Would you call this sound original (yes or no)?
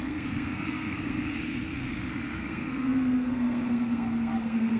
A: no